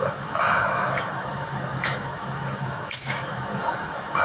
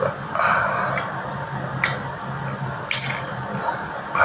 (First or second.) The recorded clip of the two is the second